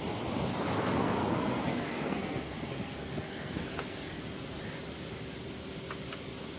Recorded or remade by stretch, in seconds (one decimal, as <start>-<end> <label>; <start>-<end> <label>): 0.0-0.5 recorded; 0.5-4.2 remade; 4.2-6.6 recorded